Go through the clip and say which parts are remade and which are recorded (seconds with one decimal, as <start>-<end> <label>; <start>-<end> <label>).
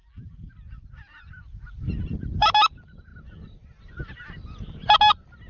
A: 0.0-0.5 remade; 0.5-5.5 recorded